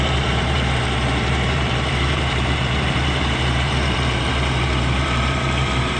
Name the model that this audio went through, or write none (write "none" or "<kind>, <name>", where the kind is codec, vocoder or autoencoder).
vocoder, BigVGAN v2